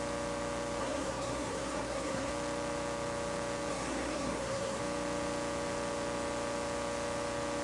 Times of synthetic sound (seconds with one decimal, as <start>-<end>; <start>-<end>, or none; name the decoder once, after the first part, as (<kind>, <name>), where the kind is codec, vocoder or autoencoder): 0.8-2.3 (codec, SNAC); 3.7-4.8